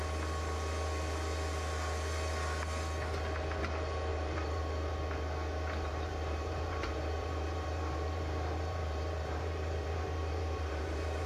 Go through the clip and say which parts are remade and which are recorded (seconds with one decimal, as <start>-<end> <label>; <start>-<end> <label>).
0.0-4.1 recorded; 4.1-4.6 remade; 4.6-5.9 recorded; 5.9-11.3 remade